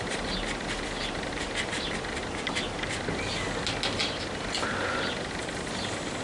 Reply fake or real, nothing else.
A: real